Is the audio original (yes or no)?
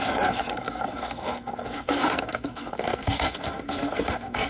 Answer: no